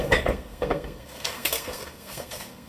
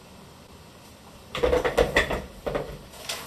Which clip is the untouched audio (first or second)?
second